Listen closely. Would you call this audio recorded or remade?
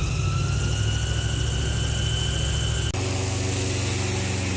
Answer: recorded